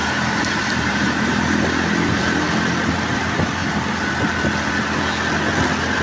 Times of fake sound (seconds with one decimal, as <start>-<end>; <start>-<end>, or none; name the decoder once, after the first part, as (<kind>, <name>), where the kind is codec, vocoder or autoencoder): 0.0-2.2 (vocoder, BigVGAN v2)